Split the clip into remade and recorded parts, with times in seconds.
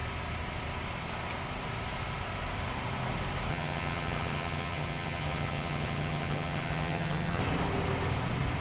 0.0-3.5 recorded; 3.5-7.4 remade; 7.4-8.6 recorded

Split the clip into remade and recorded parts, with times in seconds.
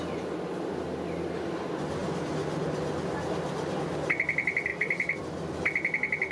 0.0-6.3 recorded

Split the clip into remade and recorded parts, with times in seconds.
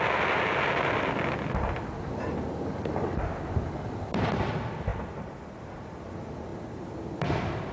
0.0-6.5 recorded; 6.5-7.7 remade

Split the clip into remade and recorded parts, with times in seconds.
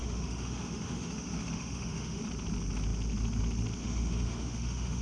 0.0-2.2 remade; 2.2-3.8 recorded; 3.8-5.0 remade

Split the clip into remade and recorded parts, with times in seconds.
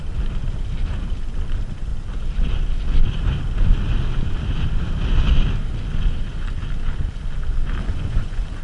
0.0-7.8 recorded; 7.8-8.6 remade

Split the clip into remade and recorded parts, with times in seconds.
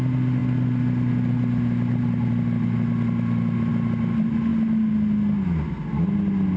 0.0-6.6 recorded